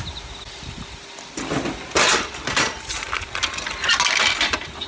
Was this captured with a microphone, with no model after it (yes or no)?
yes